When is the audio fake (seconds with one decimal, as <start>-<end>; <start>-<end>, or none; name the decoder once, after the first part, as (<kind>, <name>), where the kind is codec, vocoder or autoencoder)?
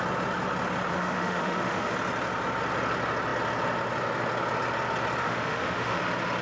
0.9-1.9 (autoencoder, DAC-VAE); 5.2-6.0